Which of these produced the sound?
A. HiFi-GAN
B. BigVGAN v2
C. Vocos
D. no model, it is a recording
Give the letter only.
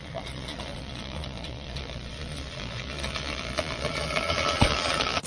C